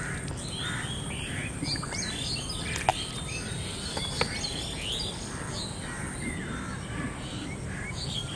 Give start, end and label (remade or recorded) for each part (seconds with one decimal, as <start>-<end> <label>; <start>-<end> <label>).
0.0-8.4 recorded